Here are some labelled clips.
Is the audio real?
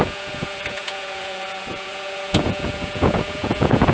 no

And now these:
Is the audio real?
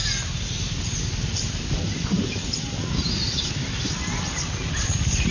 yes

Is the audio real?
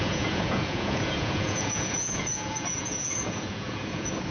no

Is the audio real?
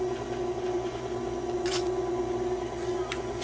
no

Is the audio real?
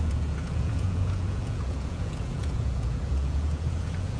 no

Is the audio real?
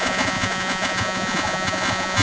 no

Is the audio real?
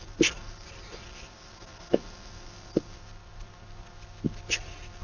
yes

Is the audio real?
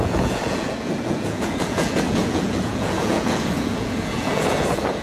no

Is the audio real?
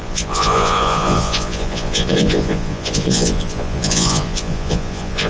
no